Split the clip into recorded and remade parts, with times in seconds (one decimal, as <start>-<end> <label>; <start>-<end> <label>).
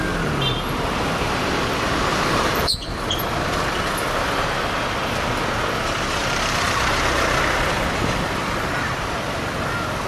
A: 0.0-2.1 recorded; 2.1-3.0 remade; 3.0-6.2 recorded; 6.2-7.0 remade; 7.0-10.1 recorded